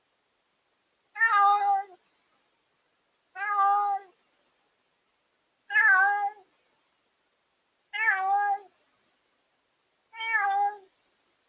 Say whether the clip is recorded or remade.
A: recorded